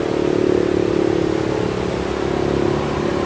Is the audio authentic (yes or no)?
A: yes